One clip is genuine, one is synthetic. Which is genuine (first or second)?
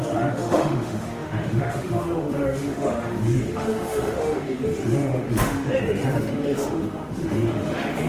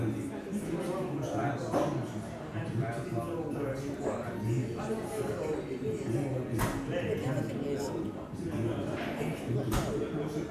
second